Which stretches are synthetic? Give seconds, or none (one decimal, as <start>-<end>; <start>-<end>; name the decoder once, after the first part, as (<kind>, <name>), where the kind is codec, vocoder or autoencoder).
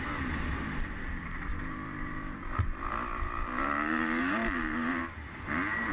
1.5-5.0 (vocoder, BigVGAN v2)